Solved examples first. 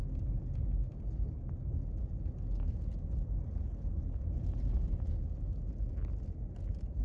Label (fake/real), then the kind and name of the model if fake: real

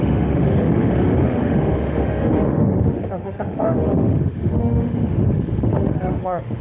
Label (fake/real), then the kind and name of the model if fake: fake, autoencoder, DAC-VAE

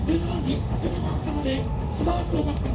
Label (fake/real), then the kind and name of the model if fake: fake, autoencoder, DAC-VAE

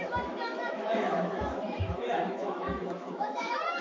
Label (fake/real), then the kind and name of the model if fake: fake, autoencoder, DAC-VAE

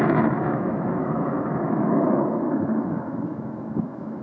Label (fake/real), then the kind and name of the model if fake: fake, autoencoder, DAC-VAE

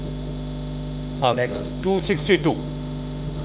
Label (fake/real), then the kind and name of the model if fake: fake, autoencoder, DAC-VAE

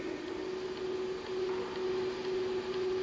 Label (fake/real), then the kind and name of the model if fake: real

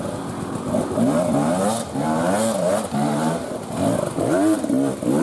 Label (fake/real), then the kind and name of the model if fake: real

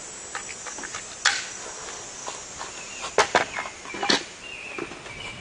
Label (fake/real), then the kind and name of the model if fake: real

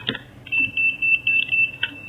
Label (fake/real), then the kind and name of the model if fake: real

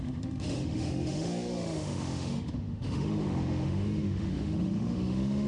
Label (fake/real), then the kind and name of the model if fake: fake, autoencoder, DAC-VAE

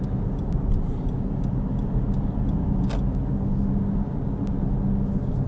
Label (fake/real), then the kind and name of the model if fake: real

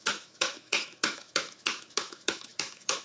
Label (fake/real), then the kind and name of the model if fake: fake, autoencoder, DAC-VAE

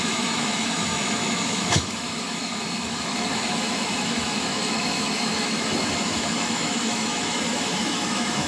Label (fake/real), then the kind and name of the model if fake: fake, autoencoder, DAC-VAE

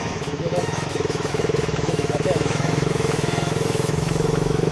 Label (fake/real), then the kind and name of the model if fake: fake, autoencoder, DAC-VAE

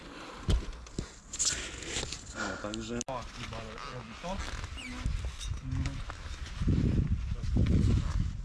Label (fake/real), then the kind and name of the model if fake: real